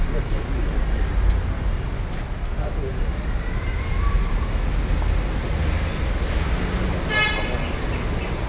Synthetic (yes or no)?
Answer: no